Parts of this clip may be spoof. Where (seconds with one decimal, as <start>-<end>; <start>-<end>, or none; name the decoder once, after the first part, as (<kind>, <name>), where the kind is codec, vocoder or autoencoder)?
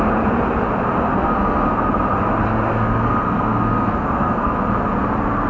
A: 1.1-1.9 (codec, SNAC); 2.7-4.6